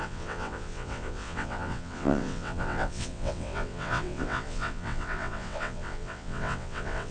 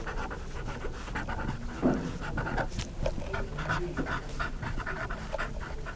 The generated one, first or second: first